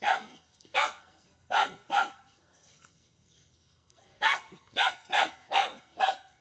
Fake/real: fake